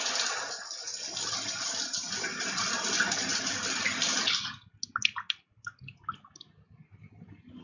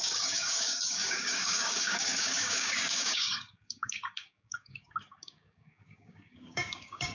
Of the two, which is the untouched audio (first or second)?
first